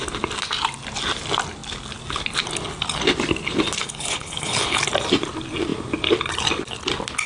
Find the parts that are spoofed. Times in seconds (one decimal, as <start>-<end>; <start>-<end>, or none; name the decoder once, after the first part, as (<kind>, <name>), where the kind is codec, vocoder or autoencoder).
3.8-4.8 (codec, HILCodec)